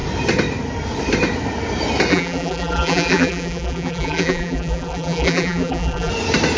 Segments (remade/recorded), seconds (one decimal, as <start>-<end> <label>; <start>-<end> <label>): 0.0-2.1 recorded; 2.1-6.1 remade; 6.1-6.6 recorded